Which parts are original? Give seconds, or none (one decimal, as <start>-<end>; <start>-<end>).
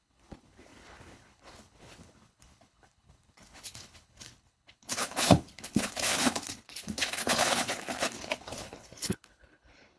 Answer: none